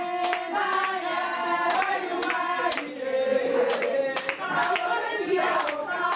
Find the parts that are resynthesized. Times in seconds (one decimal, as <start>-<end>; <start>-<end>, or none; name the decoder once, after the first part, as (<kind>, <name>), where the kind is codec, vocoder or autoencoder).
2.2-4.5 (vocoder, BigVGAN v2); 5.0-6.2